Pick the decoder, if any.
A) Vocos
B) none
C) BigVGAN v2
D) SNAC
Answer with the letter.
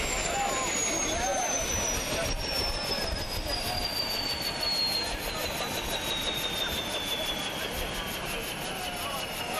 B